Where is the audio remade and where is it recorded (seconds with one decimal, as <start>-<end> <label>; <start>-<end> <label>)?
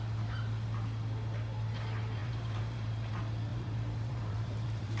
0.0-2.2 recorded; 2.2-3.1 remade; 3.1-3.5 recorded; 3.5-5.0 remade